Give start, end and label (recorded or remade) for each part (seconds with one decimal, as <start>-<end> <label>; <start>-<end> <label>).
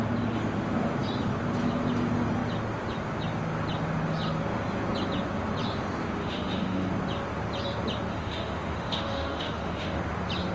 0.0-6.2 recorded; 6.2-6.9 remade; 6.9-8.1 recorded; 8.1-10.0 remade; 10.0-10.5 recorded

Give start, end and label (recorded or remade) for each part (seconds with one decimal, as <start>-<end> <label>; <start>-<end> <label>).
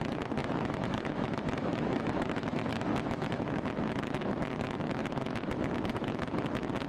0.0-6.9 remade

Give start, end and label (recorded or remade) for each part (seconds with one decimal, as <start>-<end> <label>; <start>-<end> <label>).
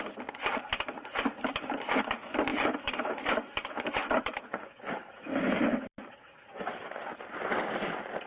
0.0-2.5 recorded; 2.5-7.1 remade; 7.1-8.3 recorded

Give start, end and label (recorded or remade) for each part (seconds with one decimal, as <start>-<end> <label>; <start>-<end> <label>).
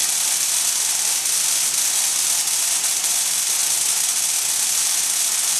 0.0-5.6 recorded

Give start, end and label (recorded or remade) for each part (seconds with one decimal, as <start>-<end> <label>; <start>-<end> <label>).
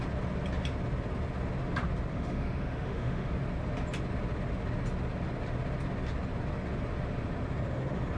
0.0-2.1 recorded; 2.1-3.3 remade; 3.3-8.2 recorded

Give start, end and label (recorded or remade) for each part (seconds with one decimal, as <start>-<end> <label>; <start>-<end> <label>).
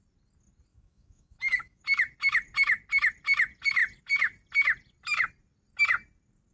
0.0-0.7 recorded; 0.7-1.8 remade; 1.8-6.5 recorded